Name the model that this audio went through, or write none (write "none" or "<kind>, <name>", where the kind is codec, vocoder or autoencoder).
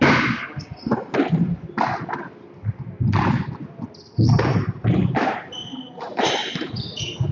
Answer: none